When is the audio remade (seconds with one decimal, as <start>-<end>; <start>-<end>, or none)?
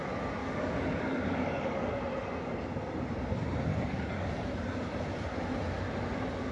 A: 0.4-1.9; 3.7-4.3